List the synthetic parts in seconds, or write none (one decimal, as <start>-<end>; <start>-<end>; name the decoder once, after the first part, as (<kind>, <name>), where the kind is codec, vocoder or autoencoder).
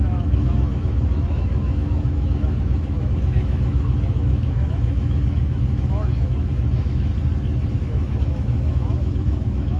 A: 0.0-7.1 (autoencoder, DAC-VAE); 7.7-9.8